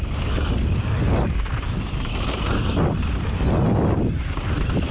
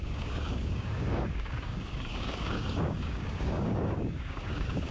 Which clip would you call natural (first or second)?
first